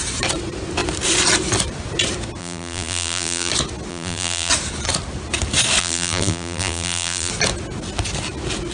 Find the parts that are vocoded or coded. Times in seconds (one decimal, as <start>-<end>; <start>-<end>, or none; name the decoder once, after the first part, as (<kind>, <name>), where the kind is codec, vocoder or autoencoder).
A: 2.4-3.5 (vocoder, BigVGAN v2); 3.9-4.5; 5.8-7.3